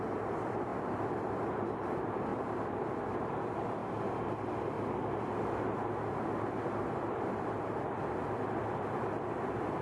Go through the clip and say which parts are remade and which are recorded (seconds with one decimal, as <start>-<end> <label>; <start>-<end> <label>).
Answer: 0.0-3.8 remade; 3.8-6.6 recorded; 6.6-9.8 remade